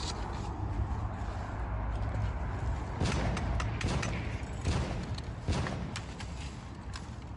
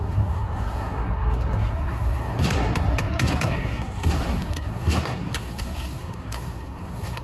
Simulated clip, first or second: second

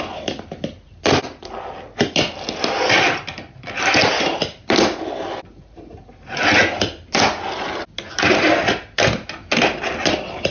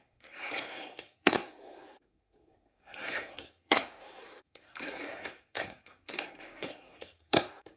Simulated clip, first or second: second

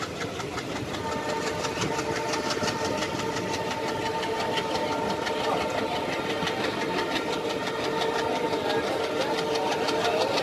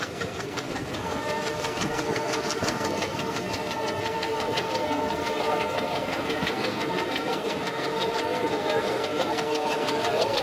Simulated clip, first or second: second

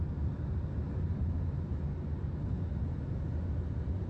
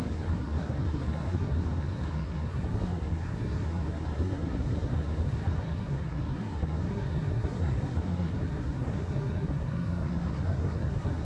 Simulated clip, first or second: second